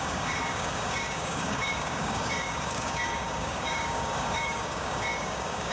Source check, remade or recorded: remade